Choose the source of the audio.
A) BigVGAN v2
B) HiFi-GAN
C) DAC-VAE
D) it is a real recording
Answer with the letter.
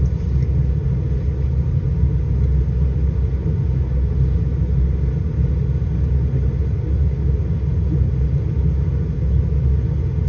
D